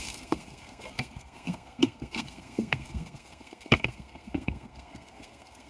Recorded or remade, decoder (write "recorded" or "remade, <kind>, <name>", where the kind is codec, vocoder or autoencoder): remade, codec, SNAC